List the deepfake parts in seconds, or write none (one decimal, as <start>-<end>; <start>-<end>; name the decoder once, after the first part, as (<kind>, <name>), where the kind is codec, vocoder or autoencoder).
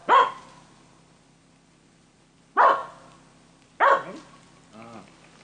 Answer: none